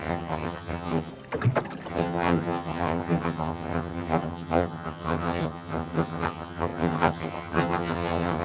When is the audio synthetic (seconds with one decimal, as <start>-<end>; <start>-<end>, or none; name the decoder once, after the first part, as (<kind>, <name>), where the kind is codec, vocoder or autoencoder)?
0.0-1.1 (vocoder, HiFi-GAN); 1.9-8.4